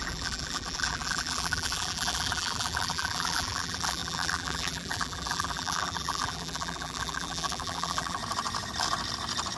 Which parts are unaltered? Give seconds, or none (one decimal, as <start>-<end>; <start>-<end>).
8.2-9.6